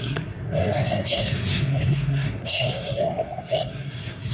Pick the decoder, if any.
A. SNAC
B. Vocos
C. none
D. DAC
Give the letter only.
A